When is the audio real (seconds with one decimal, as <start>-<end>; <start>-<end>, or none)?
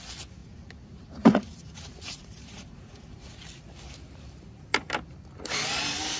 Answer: 0.0-0.4; 3.4-6.2